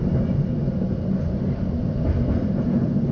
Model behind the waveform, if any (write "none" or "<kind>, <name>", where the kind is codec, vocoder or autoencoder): none